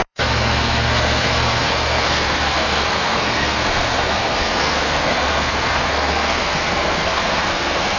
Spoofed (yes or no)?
yes